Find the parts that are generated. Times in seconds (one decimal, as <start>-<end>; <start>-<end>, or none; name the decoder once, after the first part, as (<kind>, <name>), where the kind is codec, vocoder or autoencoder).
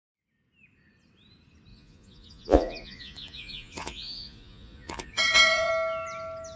1.7-5.7 (vocoder, Vocos)